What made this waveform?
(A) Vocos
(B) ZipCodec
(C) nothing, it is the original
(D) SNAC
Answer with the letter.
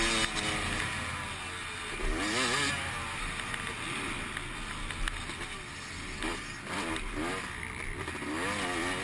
C